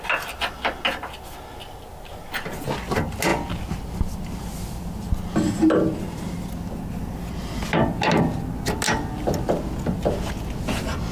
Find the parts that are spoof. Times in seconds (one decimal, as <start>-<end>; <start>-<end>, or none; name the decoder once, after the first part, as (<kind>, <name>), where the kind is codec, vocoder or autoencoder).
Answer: none